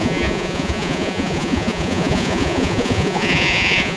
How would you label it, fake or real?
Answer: fake